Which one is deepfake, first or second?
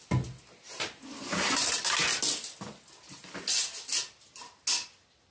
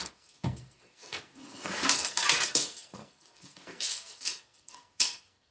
second